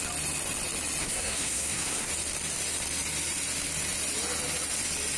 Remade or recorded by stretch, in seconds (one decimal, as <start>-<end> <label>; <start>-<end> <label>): 0.0-1.0 recorded; 1.0-2.1 remade; 2.1-5.2 recorded